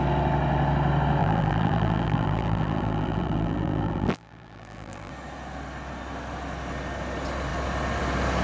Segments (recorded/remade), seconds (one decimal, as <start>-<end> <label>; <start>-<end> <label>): 0.0-1.2 recorded; 1.2-5.1 remade; 5.1-8.4 recorded